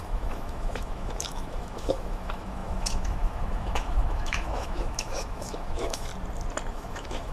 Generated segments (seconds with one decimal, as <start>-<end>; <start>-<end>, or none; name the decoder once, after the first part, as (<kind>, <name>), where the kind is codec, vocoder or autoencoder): 0.0-6.1 (autoencoder, DAC-VAE); 6.7-7.3